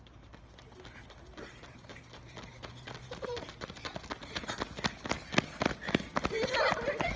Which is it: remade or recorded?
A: recorded